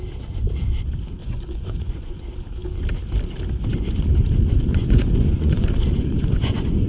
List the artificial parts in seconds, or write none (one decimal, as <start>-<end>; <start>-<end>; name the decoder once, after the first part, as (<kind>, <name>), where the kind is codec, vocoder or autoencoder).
1.2-2.2 (vocoder, Vocos); 4.7-6.9